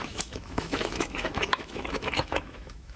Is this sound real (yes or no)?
no